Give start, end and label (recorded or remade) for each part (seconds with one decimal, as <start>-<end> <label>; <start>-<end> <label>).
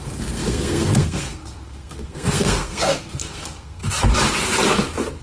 0.0-3.8 remade; 3.8-5.2 recorded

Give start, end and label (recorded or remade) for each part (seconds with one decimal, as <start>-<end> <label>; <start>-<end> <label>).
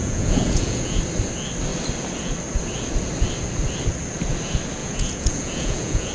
0.0-1.0 remade; 1.0-4.8 recorded; 4.8-6.1 remade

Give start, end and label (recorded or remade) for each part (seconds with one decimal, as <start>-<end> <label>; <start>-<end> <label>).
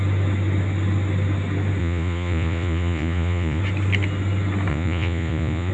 0.0-1.8 recorded; 1.8-3.6 remade; 3.6-4.7 recorded; 4.7-5.7 remade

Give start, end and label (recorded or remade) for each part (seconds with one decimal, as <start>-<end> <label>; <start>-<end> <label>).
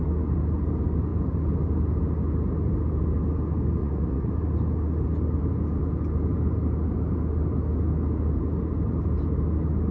0.0-3.8 recorded; 3.8-4.3 remade; 4.3-9.9 recorded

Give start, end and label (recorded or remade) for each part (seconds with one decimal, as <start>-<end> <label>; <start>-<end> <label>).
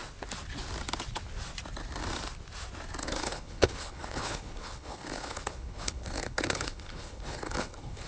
0.0-3.0 recorded; 3.0-8.1 remade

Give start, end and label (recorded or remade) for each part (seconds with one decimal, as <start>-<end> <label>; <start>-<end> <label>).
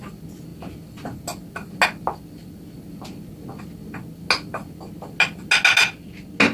0.0-6.5 recorded